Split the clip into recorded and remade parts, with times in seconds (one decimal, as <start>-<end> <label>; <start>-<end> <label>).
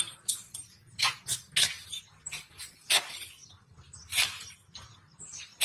0.0-0.4 remade; 0.4-2.3 recorded; 2.3-5.6 remade